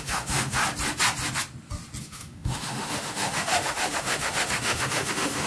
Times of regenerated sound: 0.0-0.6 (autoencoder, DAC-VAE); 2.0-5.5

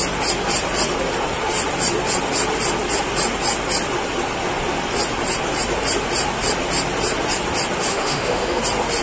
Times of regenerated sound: 7.9-8.6 (autoencoder, DAC-VAE)

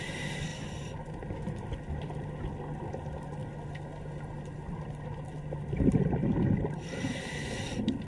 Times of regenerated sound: none

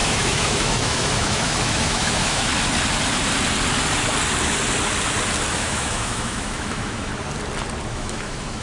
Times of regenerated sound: 0.0-2.5 (autoencoder, DAC-VAE); 5.5-7.1; 7.9-8.6

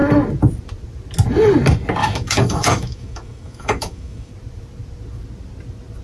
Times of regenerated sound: 2.0-4.3 (autoencoder, DAC-VAE)

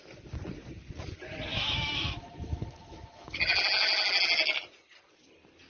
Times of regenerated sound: 1.5-3.4 (autoencoder, DAC-VAE)

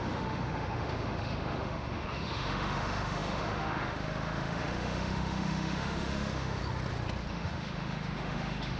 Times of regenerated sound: 0.0-6.6 (autoencoder, DAC-VAE); 7.3-8.8

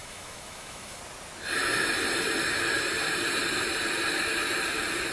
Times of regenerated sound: 0.0-1.0 (autoencoder, DAC-VAE)